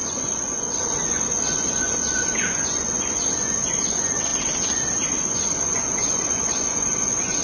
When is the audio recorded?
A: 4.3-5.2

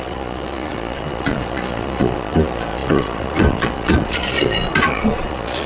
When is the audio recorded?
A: none

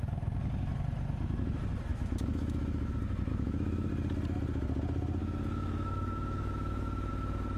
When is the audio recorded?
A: 0.0-1.9; 2.9-3.3; 3.9-5.2; 7.1-7.6

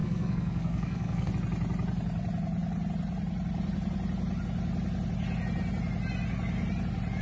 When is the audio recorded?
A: 1.3-7.2

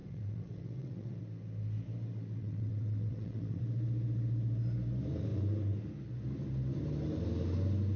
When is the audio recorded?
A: 1.2-2.4; 3.6-8.0

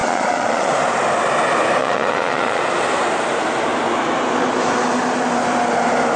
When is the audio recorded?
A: 0.7-1.8; 2.6-6.2